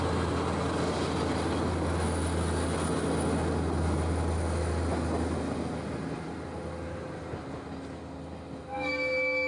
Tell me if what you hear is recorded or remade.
recorded